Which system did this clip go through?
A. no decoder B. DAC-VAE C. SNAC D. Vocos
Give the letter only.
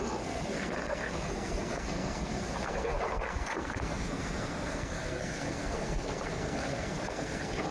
C